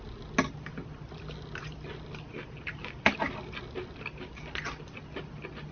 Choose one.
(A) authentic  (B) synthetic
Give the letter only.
A